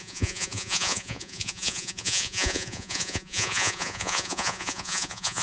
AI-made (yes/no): yes